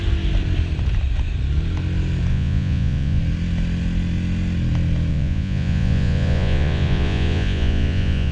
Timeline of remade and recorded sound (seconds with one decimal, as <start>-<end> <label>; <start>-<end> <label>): 0.0-2.3 recorded; 2.3-3.2 remade; 3.2-5.1 recorded; 5.1-8.3 remade